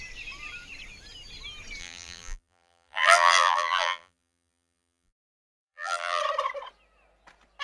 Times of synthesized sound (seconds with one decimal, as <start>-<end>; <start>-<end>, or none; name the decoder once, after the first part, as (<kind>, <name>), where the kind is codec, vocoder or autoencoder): 1.8-6.2 (vocoder, BigVGAN v2)